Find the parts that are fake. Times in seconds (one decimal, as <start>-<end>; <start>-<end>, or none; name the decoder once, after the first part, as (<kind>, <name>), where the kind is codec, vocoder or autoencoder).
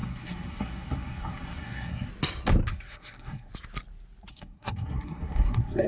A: 0.0-2.1 (codec, SNAC); 2.7-3.5; 4.3-5.9